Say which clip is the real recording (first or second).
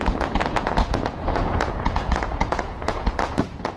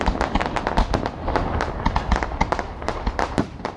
second